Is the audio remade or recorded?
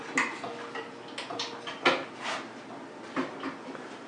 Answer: recorded